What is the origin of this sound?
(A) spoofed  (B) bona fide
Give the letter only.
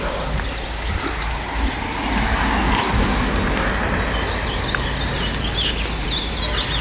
B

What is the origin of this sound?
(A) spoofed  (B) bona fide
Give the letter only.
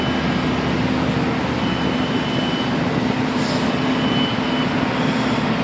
B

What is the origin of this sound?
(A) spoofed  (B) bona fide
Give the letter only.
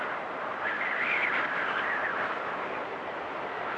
B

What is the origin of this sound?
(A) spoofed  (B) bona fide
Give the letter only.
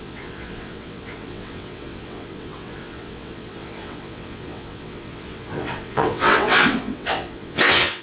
A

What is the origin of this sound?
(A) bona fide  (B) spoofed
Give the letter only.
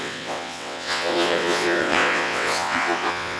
B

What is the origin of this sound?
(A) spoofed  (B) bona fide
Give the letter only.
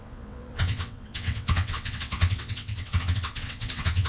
A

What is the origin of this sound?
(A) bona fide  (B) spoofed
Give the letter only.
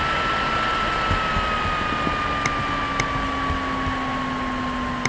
A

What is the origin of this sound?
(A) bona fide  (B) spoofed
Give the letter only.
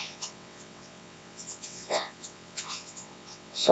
B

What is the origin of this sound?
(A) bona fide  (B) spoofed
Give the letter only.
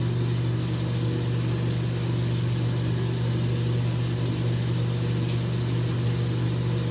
A